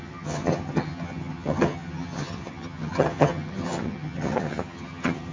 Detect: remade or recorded remade